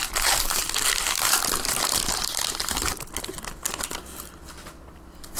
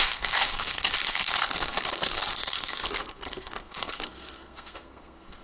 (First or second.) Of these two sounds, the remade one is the second